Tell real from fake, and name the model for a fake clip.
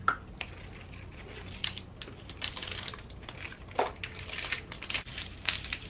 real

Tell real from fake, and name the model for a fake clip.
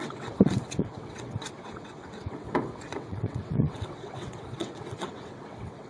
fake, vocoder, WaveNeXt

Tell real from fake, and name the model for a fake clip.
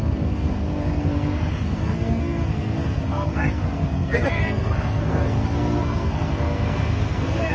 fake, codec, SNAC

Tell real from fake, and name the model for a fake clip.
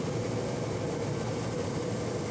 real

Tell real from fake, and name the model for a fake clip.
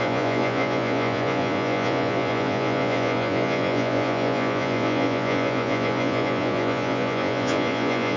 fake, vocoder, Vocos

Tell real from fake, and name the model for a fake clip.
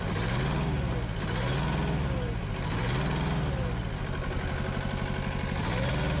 real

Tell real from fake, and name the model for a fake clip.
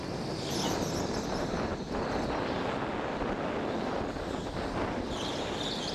real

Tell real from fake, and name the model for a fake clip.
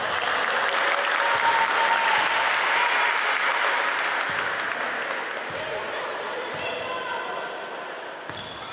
real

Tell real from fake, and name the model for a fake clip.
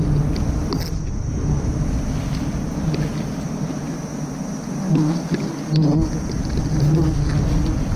real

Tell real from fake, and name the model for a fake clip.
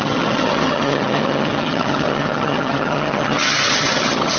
fake, vocoder, HiFi-GAN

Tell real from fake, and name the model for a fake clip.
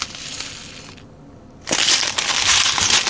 real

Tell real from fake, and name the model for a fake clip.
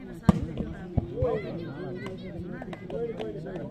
real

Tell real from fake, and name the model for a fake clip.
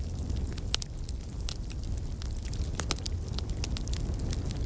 real